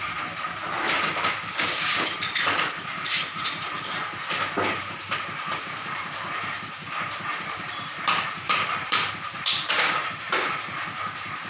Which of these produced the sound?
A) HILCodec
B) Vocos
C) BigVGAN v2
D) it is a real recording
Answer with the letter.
C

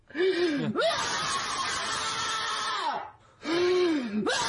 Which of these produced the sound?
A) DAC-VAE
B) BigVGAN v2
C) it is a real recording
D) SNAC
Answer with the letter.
C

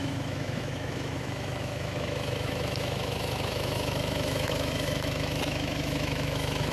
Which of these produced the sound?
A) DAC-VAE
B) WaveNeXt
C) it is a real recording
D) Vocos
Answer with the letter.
A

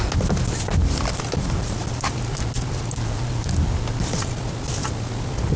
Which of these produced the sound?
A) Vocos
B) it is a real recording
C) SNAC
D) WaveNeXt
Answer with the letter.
B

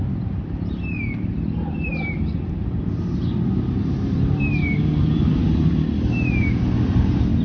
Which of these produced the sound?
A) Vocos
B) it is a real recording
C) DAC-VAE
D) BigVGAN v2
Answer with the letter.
D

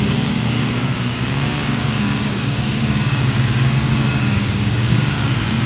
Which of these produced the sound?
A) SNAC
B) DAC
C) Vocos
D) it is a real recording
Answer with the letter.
B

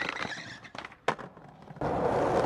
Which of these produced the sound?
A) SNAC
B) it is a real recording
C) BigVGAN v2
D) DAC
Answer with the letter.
B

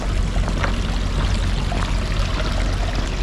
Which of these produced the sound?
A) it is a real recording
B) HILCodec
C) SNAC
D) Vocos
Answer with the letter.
A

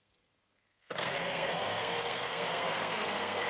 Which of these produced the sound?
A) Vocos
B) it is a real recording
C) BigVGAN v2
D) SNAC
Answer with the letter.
D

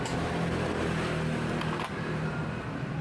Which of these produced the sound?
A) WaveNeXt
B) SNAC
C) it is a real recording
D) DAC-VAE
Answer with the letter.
C